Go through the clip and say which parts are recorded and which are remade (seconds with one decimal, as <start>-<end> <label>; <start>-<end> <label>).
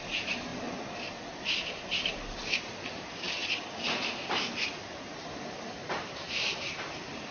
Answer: 0.0-0.5 remade; 0.5-2.3 recorded; 2.3-3.4 remade; 3.4-4.3 recorded; 4.3-7.3 remade